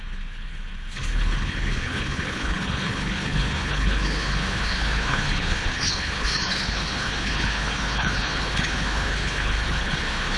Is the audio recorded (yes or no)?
no